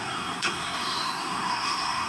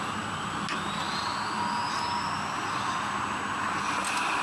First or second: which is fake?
first